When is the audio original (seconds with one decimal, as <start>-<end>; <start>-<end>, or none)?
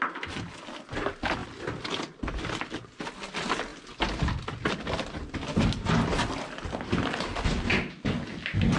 0.0-8.8